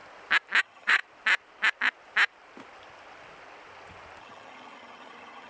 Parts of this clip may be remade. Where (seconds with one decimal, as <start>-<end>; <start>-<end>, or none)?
0.6-1.0; 4.2-5.5

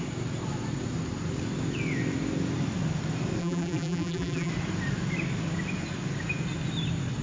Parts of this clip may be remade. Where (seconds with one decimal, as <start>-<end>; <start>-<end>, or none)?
3.4-4.5

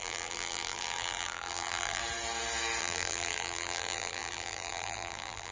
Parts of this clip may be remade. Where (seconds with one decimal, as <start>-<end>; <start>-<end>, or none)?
0.0-2.0; 2.8-5.5

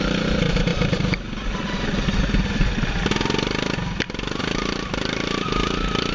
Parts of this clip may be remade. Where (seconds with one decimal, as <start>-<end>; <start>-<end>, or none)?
0.0-0.7; 4.4-6.1

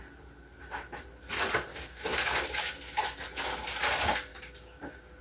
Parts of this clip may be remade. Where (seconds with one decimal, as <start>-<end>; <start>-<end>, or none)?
1.7-2.8; 4.3-5.2

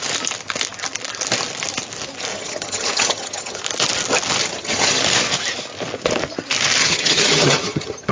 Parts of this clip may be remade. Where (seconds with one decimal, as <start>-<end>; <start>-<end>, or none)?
2.3-3.6; 4.4-5.0; 6.8-8.1

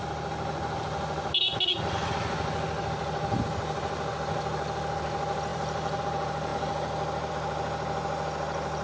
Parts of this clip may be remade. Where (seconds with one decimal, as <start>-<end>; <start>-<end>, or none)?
5.5-6.0

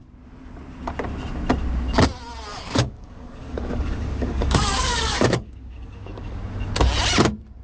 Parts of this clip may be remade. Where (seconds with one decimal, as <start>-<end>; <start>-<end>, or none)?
2.5-6.4